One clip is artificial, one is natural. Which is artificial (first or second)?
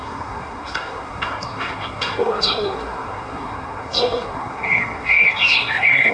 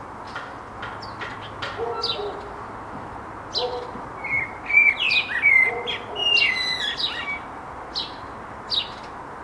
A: first